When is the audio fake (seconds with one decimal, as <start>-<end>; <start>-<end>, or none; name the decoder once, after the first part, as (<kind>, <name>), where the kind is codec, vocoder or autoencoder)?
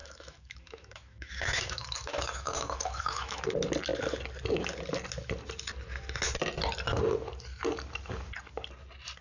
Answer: 0.0-3.4 (autoencoder, DAC-VAE)